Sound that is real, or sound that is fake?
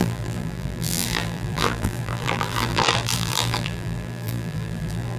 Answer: fake